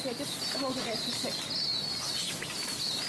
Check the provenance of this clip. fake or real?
real